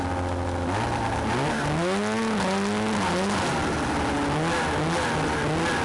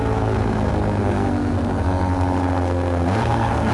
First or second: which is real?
first